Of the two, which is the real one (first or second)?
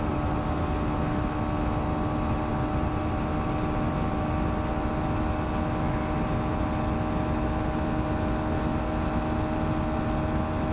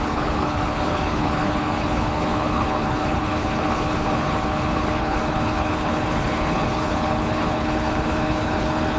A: first